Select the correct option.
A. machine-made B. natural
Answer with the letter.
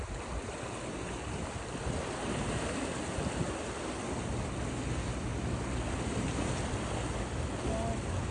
B